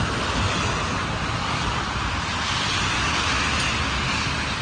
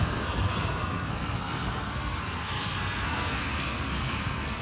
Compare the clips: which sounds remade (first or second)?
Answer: second